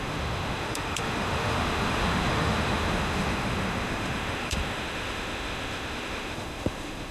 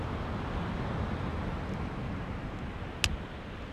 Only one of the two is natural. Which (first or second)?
second